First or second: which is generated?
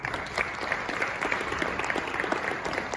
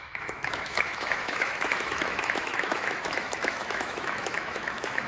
second